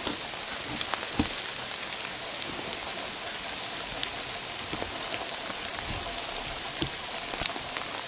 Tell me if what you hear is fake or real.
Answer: real